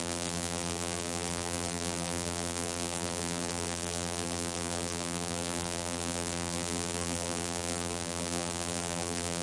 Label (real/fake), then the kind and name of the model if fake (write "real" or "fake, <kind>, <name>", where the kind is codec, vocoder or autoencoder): fake, vocoder, BigVGAN v2